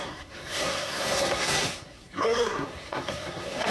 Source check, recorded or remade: remade